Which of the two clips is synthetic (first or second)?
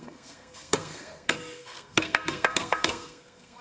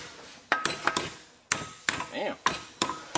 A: first